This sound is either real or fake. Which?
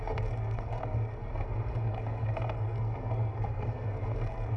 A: fake